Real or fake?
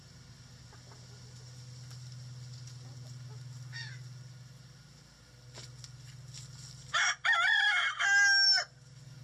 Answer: real